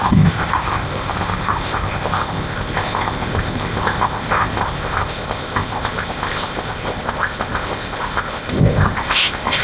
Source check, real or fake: fake